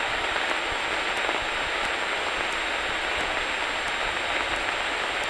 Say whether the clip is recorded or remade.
recorded